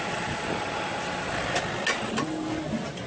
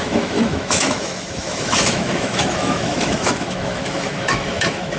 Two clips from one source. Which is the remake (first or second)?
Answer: second